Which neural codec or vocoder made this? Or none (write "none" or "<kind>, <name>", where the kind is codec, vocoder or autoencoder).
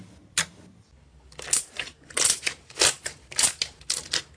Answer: none